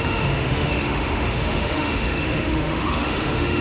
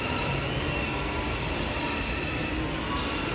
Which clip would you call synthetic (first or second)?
first